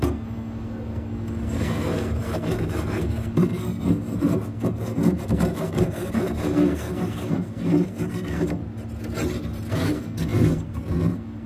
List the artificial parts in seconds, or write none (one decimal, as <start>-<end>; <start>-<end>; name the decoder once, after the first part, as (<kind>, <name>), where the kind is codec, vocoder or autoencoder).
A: 0.0-8.6 (codec, SNAC); 9.7-11.5